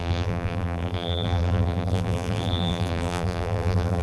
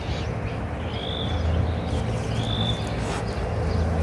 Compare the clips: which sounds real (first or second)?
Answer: second